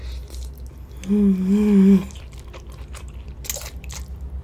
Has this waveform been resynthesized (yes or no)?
no